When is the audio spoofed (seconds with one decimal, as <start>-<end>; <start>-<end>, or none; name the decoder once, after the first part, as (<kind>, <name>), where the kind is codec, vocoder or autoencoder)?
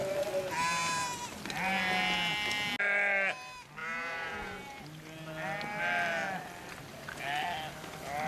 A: 3.8-4.8 (vocoder, Vocos)